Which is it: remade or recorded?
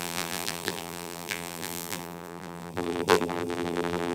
remade